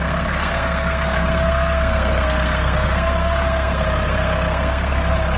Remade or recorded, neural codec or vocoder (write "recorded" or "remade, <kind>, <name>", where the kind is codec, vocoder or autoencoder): remade, codec, SNAC